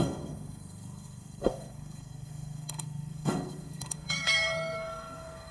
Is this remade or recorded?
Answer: remade